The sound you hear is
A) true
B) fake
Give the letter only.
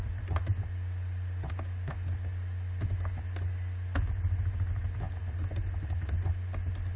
A